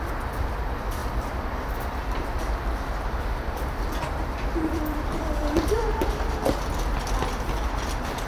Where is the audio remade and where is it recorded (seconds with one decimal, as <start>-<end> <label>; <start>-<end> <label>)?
0.0-1.0 recorded; 1.0-6.0 remade; 6.0-8.3 recorded